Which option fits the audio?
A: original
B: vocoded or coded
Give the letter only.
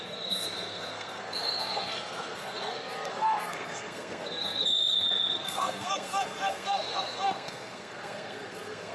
B